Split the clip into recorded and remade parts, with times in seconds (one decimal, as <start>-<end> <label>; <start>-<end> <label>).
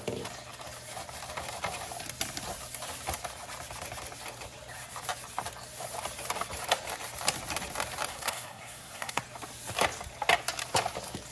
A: 0.0-8.1 recorded; 8.1-9.2 remade; 9.2-11.3 recorded